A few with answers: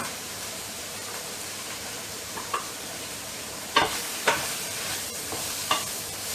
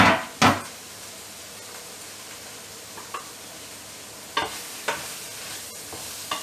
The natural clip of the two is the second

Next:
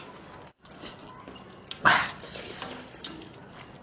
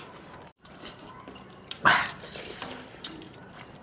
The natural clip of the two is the first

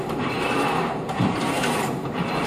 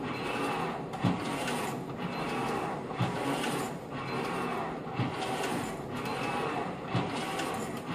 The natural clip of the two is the second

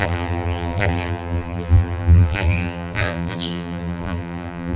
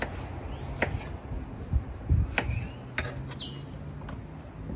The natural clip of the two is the second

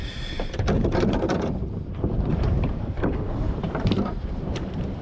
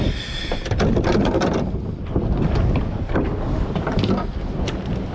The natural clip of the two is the second